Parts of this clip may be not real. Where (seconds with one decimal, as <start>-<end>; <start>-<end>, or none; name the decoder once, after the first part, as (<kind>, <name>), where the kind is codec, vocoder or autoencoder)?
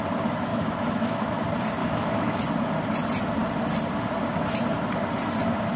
0.5-1.4 (autoencoder, DAC-VAE); 1.8-2.4